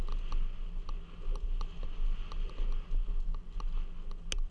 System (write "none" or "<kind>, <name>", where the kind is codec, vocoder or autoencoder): none